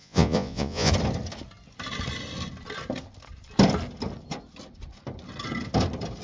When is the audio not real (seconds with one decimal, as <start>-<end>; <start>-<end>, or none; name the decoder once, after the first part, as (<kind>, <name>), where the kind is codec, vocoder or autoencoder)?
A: 0.0-0.9 (vocoder, Vocos)